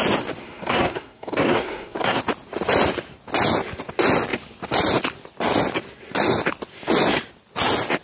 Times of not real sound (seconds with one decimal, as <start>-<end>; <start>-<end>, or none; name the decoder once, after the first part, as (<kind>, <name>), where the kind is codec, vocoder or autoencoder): 0.4-2.2 (codec, SNAC)